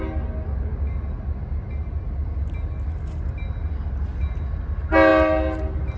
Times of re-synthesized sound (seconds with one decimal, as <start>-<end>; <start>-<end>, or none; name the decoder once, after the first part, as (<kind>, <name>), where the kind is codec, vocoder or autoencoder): none